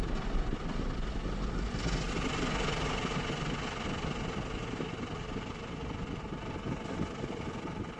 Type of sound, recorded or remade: recorded